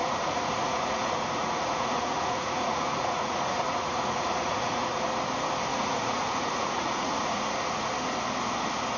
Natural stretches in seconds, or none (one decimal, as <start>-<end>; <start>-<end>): 5.0-5.7; 7.9-9.0